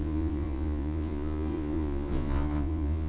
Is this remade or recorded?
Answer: remade